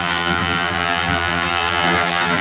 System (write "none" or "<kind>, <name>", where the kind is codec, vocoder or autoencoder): vocoder, BigVGAN v2